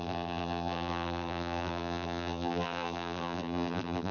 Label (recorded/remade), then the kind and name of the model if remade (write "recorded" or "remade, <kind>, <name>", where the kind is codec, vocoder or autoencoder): remade, vocoder, BigVGAN v2